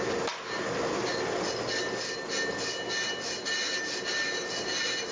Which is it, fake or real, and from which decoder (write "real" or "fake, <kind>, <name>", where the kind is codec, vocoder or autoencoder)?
real